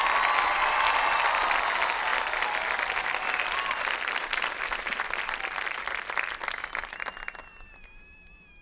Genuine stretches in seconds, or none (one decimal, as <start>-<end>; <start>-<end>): 0.0-8.6